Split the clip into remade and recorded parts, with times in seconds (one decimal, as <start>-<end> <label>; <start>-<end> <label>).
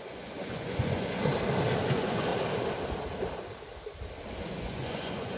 0.0-1.3 remade; 1.3-1.8 recorded; 1.8-2.3 remade; 2.3-4.4 recorded; 4.4-5.4 remade